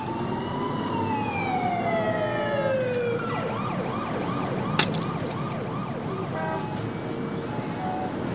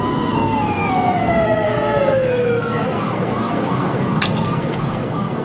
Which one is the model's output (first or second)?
second